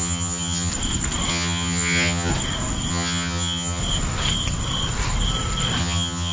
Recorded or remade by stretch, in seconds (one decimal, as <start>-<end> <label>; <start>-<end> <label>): 0.0-0.7 remade; 0.7-1.3 recorded; 1.3-2.3 remade; 2.3-2.9 recorded; 2.9-3.8 remade; 3.8-5.8 recorded; 5.8-6.3 remade